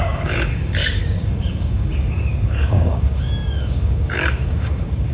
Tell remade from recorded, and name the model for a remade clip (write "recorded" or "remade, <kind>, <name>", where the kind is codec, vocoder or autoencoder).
remade, codec, DAC